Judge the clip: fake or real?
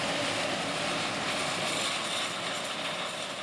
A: real